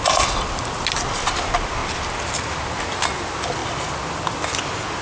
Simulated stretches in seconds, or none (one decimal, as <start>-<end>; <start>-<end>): none